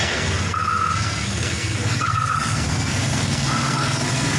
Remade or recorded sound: remade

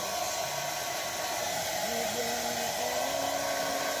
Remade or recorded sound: recorded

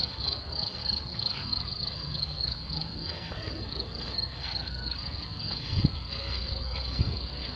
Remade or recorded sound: remade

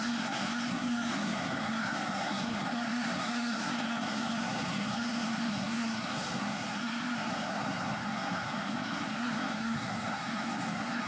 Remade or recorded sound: remade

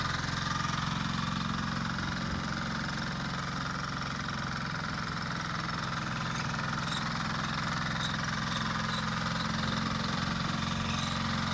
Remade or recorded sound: recorded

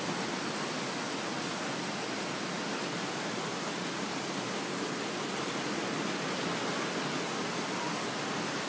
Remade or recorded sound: recorded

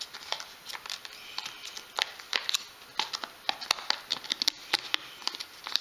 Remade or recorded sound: recorded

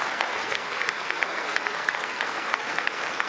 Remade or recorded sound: remade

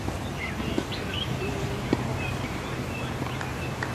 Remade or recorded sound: recorded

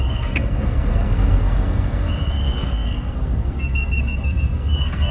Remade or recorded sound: remade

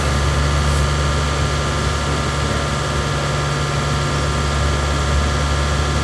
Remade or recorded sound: recorded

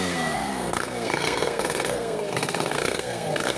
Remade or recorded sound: remade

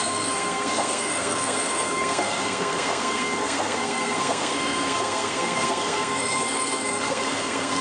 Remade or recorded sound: remade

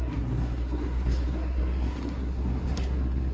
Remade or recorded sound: remade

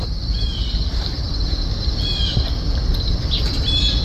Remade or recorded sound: recorded